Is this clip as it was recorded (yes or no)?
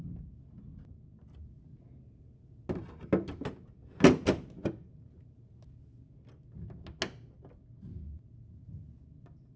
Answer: yes